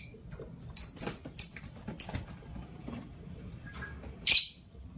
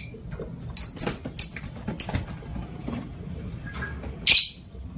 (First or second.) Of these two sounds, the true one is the second